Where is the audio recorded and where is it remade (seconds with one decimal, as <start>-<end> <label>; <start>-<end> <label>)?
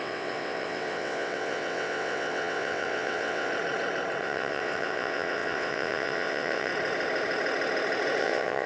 0.0-3.5 remade; 3.5-4.2 recorded; 4.2-6.7 remade; 6.7-8.2 recorded; 8.2-8.7 remade